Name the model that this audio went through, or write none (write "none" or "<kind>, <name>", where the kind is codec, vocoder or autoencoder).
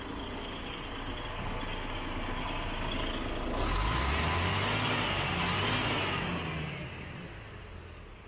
none